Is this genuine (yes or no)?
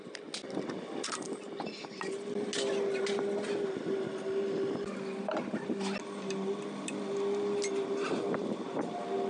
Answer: yes